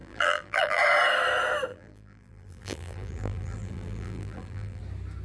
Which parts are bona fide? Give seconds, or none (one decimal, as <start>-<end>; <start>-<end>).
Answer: 0.8-1.7; 4.8-5.2